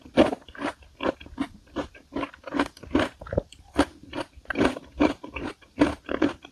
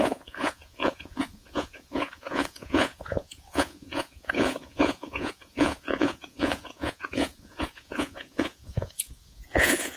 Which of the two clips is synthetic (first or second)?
second